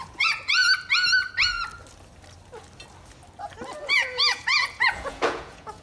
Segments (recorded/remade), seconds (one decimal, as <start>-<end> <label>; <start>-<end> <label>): 0.0-0.7 remade; 0.7-3.8 recorded; 3.8-5.8 remade